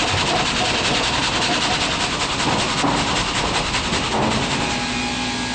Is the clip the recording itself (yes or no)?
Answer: yes